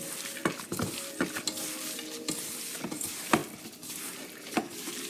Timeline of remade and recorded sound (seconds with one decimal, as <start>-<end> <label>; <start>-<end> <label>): 0.0-5.1 recorded